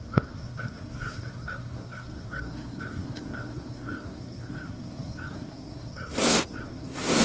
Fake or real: fake